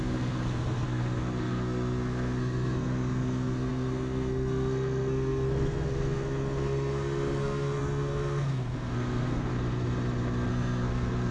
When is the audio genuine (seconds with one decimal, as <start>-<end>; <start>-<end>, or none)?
9.5-10.5